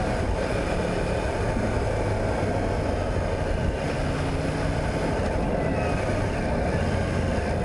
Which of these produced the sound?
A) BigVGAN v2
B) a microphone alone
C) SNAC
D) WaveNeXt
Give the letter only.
B